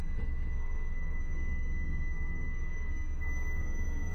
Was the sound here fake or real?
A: fake